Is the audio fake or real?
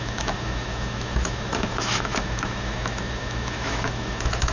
fake